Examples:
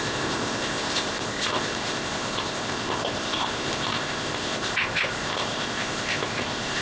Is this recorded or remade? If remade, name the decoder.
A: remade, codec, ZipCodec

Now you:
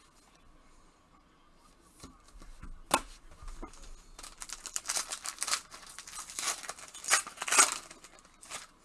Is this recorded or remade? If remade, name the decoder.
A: recorded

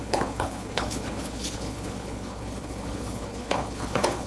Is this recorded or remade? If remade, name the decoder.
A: remade, codec, HILCodec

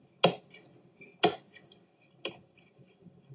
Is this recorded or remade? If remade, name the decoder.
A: recorded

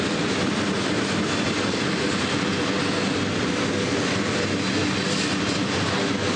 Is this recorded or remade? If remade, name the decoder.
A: recorded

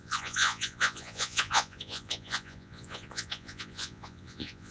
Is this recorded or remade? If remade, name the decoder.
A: remade, vocoder, Vocos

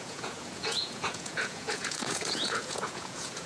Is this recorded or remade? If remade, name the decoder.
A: remade, vocoder, Vocos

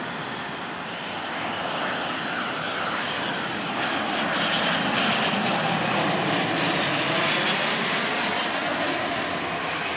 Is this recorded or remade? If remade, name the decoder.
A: recorded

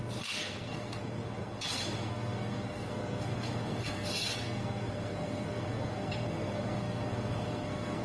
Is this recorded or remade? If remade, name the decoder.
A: remade, codec, SNAC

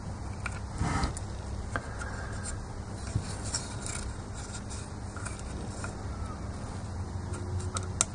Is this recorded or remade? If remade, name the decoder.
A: recorded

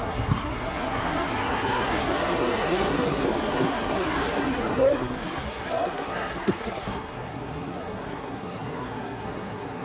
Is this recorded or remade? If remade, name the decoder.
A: remade, codec, SNAC